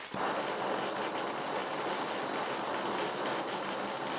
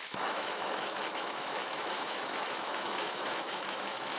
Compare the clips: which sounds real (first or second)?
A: first